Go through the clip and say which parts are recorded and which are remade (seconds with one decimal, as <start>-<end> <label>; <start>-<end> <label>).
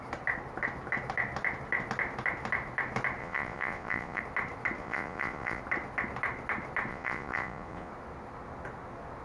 0.0-3.2 recorded; 3.2-4.2 remade; 4.2-4.8 recorded; 4.8-5.6 remade; 5.6-6.9 recorded; 6.9-7.9 remade; 7.9-9.2 recorded